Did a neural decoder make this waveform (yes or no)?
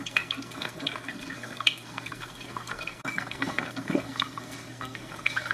yes